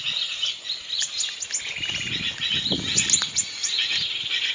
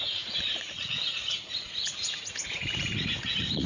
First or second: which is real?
first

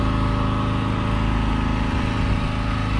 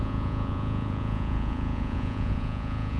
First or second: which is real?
first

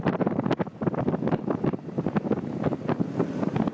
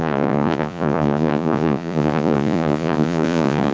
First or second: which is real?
first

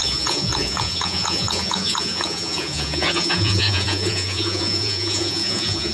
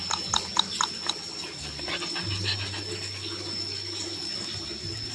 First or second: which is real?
second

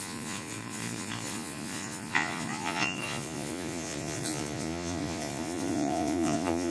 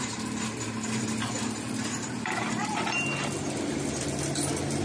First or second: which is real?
second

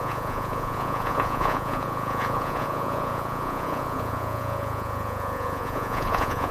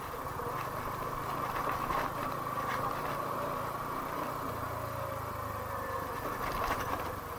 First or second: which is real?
second